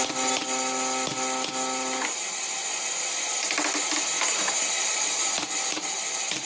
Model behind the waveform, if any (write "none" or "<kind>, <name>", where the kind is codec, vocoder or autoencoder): none